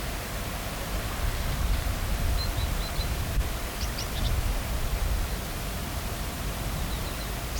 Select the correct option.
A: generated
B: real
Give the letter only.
A